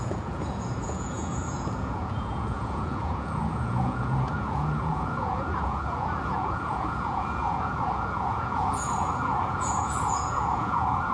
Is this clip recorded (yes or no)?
no